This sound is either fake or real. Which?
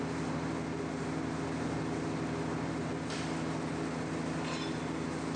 real